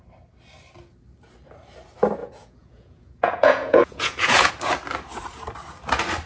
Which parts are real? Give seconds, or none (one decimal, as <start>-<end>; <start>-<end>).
0.0-2.2; 4.5-6.3